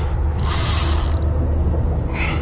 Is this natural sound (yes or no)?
yes